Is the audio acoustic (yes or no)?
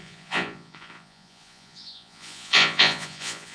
no